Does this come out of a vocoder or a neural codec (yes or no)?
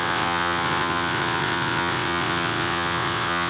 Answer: yes